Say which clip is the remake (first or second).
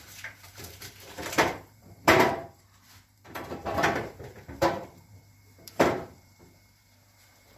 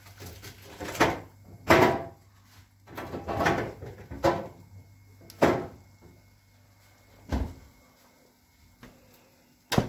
first